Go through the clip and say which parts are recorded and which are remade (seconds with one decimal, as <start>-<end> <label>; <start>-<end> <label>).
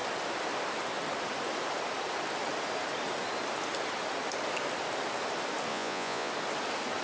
0.0-5.7 recorded; 5.7-6.3 remade; 6.3-7.0 recorded